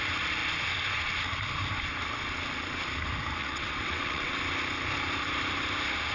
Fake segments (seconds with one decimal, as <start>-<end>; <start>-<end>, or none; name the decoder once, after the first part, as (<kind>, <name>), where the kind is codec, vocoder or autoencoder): 3.4-4.4 (vocoder, WaveNeXt)